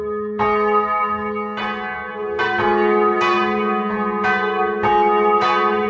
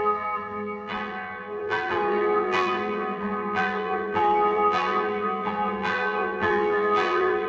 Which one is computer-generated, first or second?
second